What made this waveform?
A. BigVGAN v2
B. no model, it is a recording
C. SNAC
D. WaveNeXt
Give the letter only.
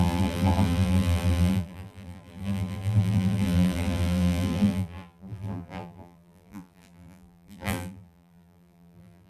A